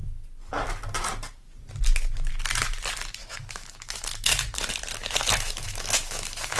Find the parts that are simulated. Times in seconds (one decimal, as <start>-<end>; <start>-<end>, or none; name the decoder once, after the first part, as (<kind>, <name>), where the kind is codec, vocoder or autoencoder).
3.2-4.6 (autoencoder, DAC-VAE); 5.0-6.6